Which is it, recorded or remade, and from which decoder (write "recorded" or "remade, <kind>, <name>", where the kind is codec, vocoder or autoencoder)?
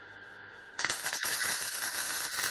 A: remade, autoencoder, DAC-VAE